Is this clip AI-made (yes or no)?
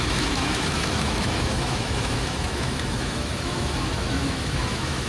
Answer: yes